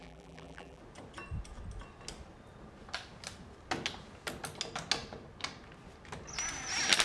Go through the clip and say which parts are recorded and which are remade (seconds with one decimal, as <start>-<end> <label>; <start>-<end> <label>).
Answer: 0.0-0.8 remade; 0.8-7.0 recorded